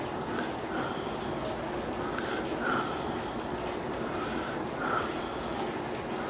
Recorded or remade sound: recorded